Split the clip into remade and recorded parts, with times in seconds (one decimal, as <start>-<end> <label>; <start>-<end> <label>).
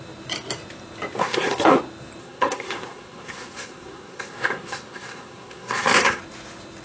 0.0-1.2 recorded; 1.2-1.8 remade; 1.8-2.2 recorded; 2.2-6.2 remade; 6.2-6.8 recorded